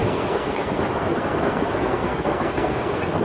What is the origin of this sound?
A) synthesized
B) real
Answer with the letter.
A